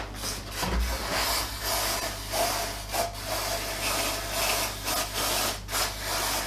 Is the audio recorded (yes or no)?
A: yes